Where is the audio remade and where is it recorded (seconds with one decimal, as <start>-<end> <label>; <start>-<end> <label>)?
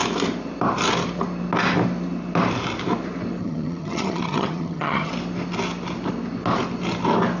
0.0-3.4 recorded; 3.4-5.1 remade; 5.1-7.4 recorded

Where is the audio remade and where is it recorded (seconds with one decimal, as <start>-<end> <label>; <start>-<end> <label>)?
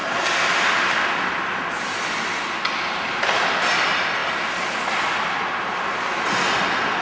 0.0-4.2 recorded; 4.2-6.6 remade; 6.6-7.0 recorded